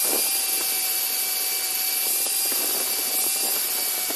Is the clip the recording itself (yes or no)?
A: yes